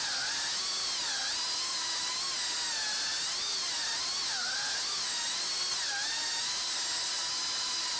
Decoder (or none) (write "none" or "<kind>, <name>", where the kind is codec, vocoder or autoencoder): none